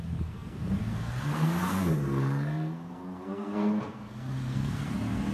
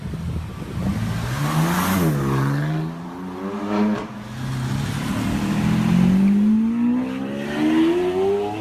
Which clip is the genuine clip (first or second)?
second